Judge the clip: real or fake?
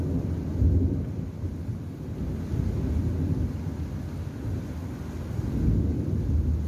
real